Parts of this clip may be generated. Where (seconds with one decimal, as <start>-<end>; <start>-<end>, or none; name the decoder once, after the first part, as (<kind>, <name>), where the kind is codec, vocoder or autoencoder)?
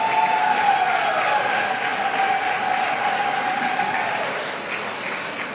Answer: none